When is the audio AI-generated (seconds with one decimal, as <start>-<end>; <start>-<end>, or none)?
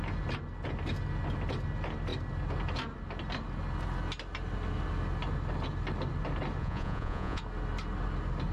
6.6-7.4